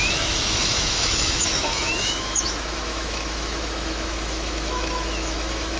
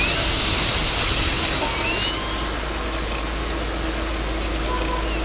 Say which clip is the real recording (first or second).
second